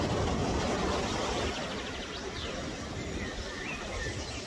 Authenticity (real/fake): real